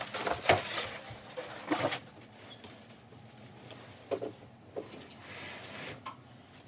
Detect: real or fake real